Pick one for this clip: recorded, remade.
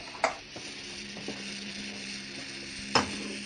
recorded